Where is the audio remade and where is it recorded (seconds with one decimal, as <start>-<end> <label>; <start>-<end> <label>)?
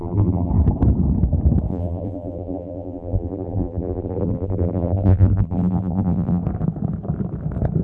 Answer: 0.0-0.5 remade; 0.5-1.7 recorded; 1.7-6.4 remade; 6.4-7.8 recorded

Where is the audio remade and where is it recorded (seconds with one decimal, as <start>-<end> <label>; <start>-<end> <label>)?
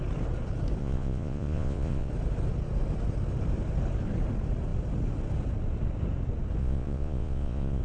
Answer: 0.0-0.8 recorded; 0.8-2.1 remade; 2.1-6.6 recorded; 6.6-7.8 remade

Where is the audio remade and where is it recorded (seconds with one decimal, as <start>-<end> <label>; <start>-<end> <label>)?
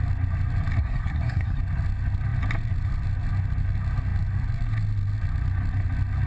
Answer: 0.0-0.8 recorded; 0.8-1.6 remade; 1.6-6.3 recorded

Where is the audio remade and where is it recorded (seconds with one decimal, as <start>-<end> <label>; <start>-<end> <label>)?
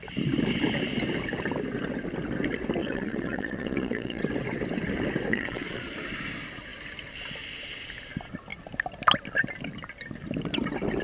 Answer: 0.0-2.8 recorded; 2.8-4.2 remade; 4.2-5.3 recorded; 5.3-5.9 remade; 5.9-11.0 recorded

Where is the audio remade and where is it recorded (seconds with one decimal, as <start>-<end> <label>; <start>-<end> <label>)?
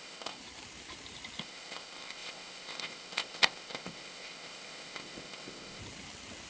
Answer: 0.0-0.4 remade; 0.4-1.4 recorded; 1.4-5.8 remade; 5.8-6.5 recorded